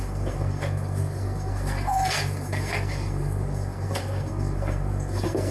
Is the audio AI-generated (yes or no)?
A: yes